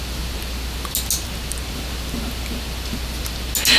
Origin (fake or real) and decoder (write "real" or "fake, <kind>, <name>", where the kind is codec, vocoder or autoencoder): real